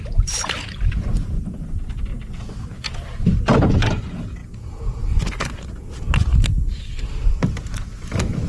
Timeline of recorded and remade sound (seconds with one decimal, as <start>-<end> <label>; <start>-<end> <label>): 0.0-6.3 recorded; 6.3-7.1 remade; 7.1-8.5 recorded